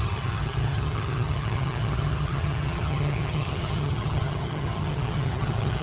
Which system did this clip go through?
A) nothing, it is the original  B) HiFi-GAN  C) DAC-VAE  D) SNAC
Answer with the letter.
B